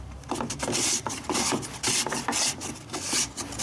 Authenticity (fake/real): real